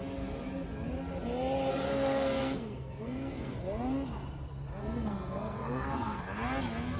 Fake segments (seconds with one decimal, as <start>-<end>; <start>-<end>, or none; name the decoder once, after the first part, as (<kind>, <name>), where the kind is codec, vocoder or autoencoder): 1.7-3.5 (codec, SNAC); 4.8-6.2